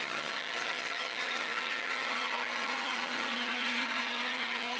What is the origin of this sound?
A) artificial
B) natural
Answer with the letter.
A